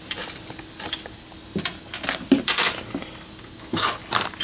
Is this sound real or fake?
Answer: real